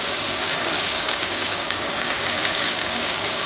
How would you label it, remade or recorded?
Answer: remade